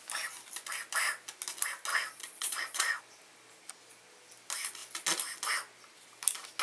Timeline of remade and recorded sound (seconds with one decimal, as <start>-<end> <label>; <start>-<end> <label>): 0.0-1.9 recorded; 1.9-3.0 remade; 3.0-6.6 recorded